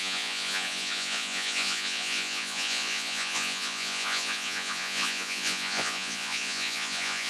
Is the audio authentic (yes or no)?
no